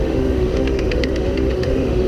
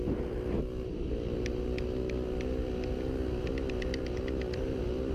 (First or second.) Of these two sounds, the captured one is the second